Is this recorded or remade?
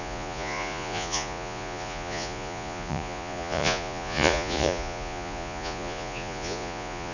remade